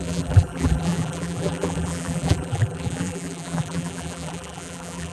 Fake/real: fake